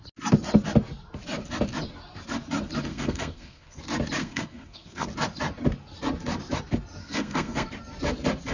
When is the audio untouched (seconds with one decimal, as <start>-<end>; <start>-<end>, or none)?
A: 0.0-2.9; 3.8-4.2; 5.1-7.0; 7.7-8.5